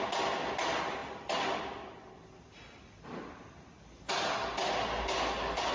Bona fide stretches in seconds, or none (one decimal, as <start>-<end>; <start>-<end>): 0.0-5.7